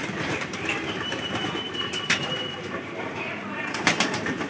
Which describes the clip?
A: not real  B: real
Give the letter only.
A